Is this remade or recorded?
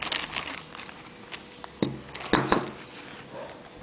recorded